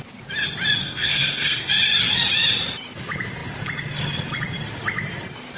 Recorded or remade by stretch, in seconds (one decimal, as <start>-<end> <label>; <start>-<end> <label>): 0.0-0.8 recorded; 0.8-1.7 remade; 1.7-5.6 recorded